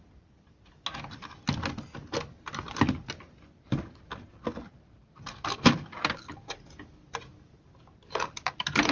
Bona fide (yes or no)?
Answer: yes